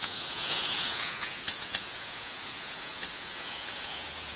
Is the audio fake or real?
fake